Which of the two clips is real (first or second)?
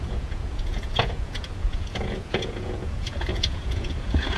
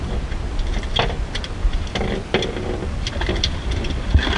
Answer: second